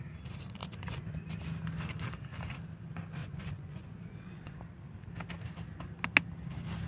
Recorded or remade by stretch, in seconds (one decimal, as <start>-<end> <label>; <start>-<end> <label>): 0.0-0.6 recorded; 0.6-1.2 remade; 1.2-3.2 recorded; 3.2-4.6 remade; 4.6-6.9 recorded